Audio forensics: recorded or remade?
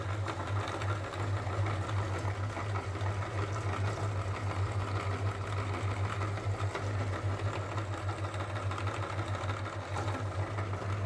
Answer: recorded